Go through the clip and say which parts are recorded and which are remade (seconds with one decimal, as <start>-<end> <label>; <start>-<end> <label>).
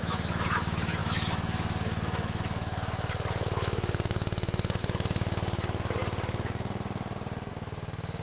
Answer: 0.0-6.0 remade; 6.0-7.5 recorded; 7.5-8.2 remade